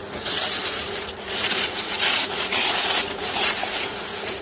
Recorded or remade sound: remade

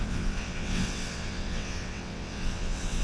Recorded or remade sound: remade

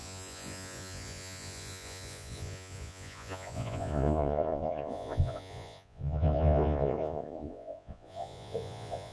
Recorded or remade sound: remade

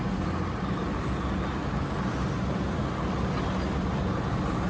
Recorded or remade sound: recorded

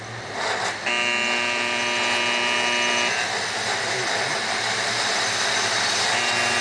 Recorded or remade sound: recorded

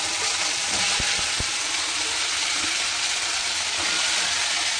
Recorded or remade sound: recorded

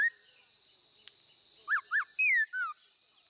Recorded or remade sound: recorded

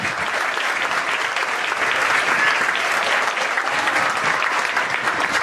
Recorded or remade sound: recorded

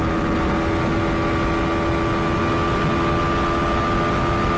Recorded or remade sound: recorded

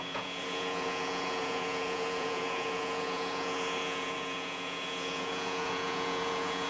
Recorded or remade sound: remade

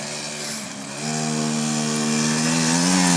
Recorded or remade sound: recorded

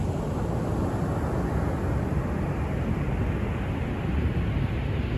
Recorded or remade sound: recorded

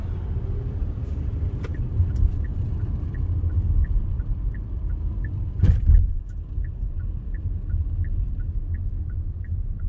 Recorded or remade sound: remade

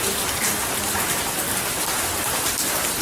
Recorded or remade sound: recorded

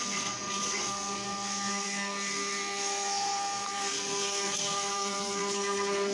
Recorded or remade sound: remade